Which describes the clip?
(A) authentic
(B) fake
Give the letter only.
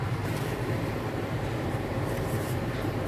B